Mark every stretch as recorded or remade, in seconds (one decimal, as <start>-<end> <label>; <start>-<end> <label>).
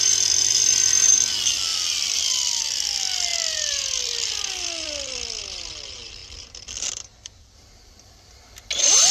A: 0.0-1.7 recorded; 1.7-2.6 remade; 2.6-3.3 recorded; 3.3-5.4 remade; 5.4-6.2 recorded; 6.2-8.4 remade; 8.4-9.1 recorded